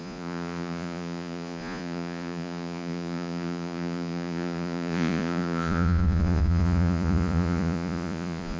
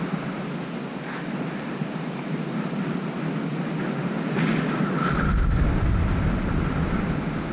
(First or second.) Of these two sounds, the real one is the second